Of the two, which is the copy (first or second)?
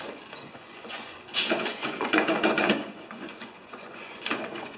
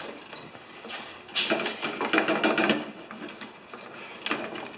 first